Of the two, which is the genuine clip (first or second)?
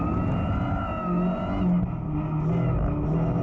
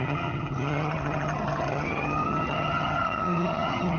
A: first